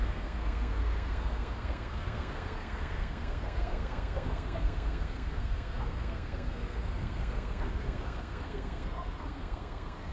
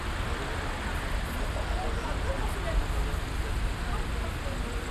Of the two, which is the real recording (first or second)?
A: second